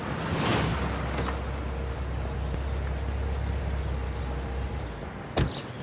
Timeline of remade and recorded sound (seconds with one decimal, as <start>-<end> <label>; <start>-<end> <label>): 0.0-5.8 recorded